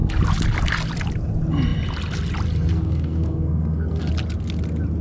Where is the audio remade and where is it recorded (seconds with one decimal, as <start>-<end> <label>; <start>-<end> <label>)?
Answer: 0.0-2.7 recorded; 2.7-4.1 remade; 4.1-5.0 recorded